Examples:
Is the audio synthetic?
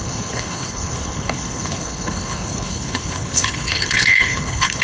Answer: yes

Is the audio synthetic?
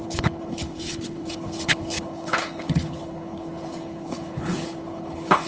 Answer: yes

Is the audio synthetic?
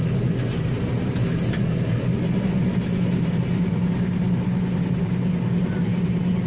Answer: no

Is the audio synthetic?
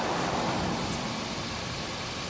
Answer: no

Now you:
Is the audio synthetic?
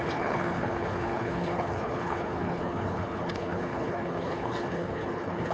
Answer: yes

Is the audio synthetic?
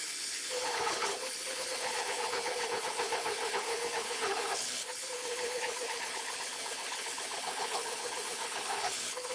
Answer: yes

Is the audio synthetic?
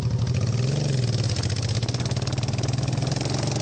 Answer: no